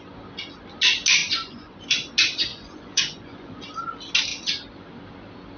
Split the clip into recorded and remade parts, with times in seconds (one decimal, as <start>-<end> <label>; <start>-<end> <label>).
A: 0.0-1.2 recorded; 1.2-1.8 remade; 1.8-2.5 recorded; 2.5-3.6 remade; 3.6-5.6 recorded